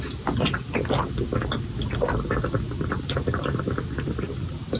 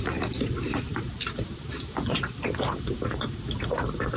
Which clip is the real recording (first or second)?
first